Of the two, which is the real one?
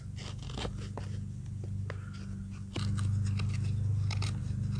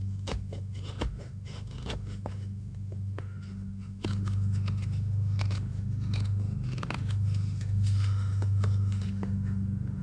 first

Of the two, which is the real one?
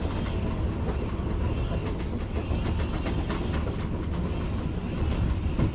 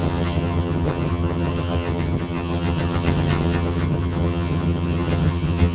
first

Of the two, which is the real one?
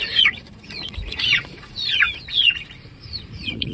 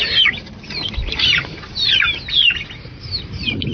second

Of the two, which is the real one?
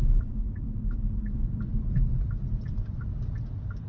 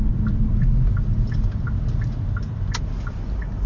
second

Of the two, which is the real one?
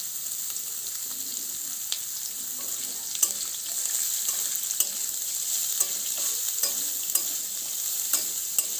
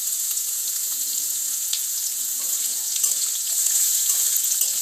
first